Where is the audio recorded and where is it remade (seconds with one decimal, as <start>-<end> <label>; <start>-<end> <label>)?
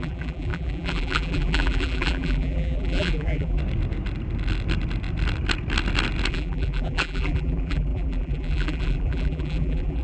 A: 0.0-3.6 remade; 3.6-6.3 recorded; 6.3-10.0 remade